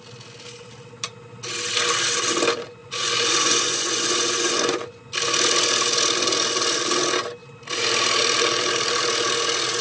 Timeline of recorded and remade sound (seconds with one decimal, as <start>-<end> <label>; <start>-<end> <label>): 0.0-2.8 recorded; 2.8-5.1 remade; 5.1-9.8 recorded